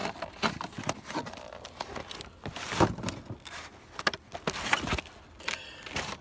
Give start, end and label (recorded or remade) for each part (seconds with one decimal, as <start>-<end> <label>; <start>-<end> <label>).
0.0-6.2 recorded